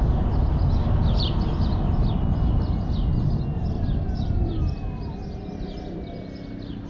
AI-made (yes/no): no